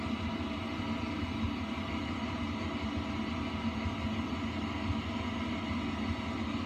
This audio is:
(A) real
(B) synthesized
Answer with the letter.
A